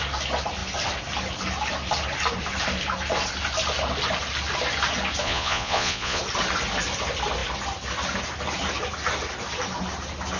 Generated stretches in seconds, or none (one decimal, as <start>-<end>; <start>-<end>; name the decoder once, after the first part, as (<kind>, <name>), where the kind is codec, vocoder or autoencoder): 5.2-6.2 (vocoder, Vocos)